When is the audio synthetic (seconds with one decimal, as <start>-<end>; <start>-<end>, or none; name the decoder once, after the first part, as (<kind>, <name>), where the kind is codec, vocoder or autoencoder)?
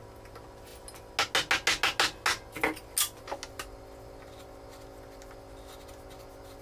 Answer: none